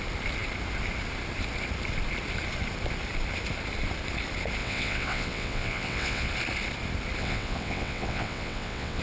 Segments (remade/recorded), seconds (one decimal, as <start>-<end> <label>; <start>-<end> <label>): 0.0-4.6 recorded; 4.6-6.3 remade; 6.3-7.2 recorded; 7.2-9.0 remade